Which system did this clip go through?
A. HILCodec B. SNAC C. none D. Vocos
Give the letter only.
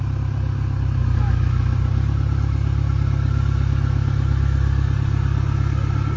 C